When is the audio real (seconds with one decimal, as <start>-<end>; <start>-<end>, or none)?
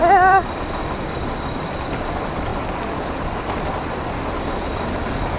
2.1-5.4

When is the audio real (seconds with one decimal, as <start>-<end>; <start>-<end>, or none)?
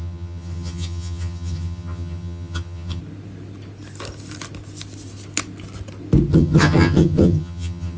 3.0-6.3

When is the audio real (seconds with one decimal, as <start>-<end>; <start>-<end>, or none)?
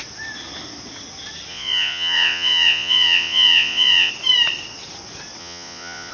0.0-1.5; 4.1-5.4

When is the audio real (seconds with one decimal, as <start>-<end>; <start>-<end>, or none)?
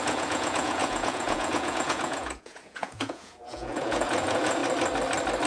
4.6-5.5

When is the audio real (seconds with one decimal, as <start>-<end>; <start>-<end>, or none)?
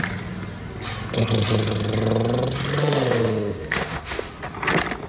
0.0-2.8; 4.3-5.1